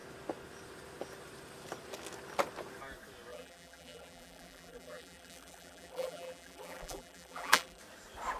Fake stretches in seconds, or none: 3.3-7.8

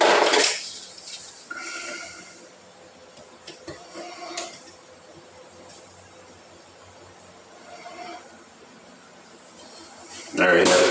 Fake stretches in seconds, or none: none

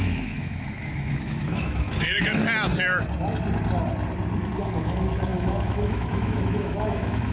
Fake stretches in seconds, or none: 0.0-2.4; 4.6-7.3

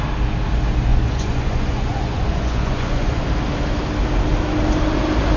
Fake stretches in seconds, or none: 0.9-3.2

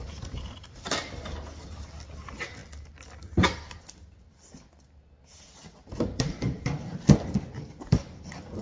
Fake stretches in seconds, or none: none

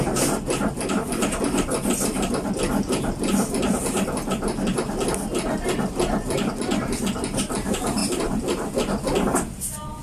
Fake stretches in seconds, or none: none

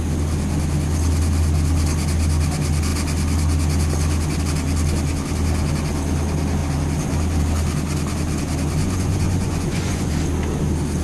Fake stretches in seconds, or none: 8.8-10.1